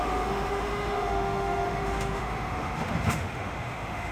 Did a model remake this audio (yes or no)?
yes